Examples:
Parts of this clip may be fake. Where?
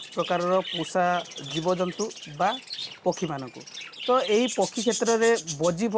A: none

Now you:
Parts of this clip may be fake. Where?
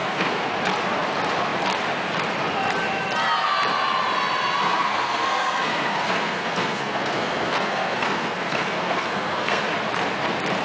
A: 0.0-0.5 (codec, SNAC); 4.6-9.6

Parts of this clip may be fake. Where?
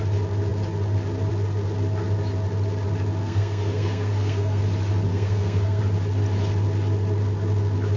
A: 3.2-4.6 (codec, SNAC); 5.1-5.8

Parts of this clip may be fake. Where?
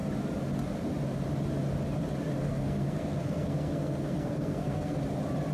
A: 2.4-5.0 (codec, SNAC)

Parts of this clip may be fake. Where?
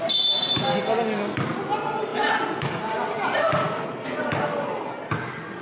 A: none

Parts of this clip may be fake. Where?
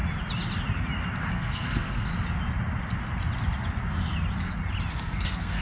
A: 1.3-2.1 (codec, SNAC); 4.9-5.6